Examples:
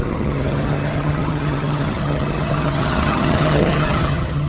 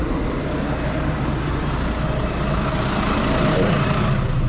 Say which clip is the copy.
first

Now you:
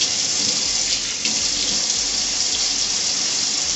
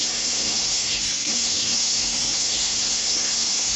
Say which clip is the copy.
second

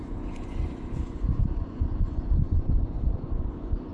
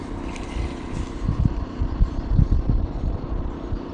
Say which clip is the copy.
first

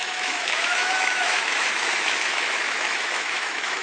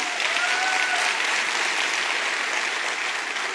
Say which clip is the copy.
first